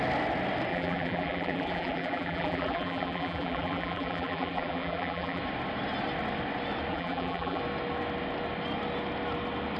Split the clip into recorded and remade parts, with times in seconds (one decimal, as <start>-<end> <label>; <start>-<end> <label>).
0.0-0.7 recorded; 0.7-5.4 remade; 5.4-6.9 recorded; 6.9-7.6 remade; 7.6-9.8 recorded